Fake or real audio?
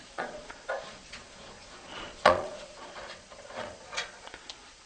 fake